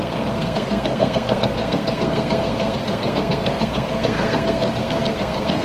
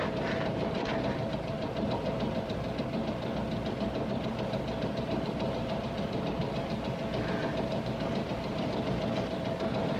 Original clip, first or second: second